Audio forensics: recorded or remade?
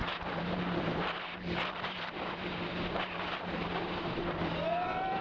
remade